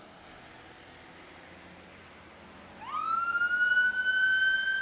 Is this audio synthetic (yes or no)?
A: no